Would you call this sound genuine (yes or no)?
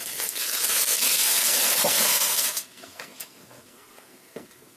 no